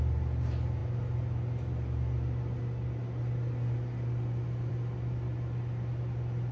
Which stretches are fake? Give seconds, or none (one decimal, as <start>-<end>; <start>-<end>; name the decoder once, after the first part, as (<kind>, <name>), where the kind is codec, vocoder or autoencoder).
none